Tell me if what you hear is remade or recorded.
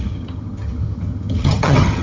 remade